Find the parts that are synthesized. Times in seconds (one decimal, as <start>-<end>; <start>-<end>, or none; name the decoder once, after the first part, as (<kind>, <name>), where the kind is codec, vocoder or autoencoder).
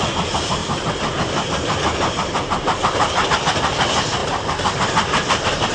0.6-3.3 (vocoder, BigVGAN v2); 4.2-5.7